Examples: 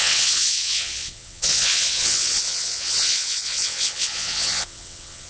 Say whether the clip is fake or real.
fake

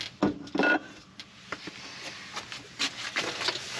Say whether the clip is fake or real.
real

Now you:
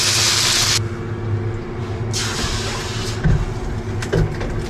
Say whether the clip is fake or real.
real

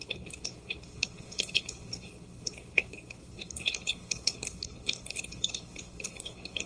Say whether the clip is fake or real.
fake